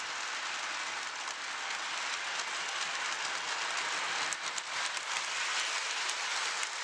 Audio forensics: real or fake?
real